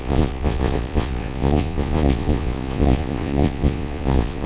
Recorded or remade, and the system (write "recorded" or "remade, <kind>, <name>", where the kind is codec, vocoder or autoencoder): remade, vocoder, Vocos